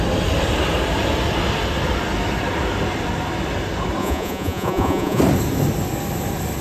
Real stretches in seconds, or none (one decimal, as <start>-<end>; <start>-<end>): 0.0-4.0; 5.2-6.6